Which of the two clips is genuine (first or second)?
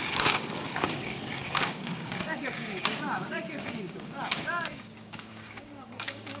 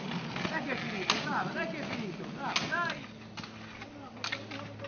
second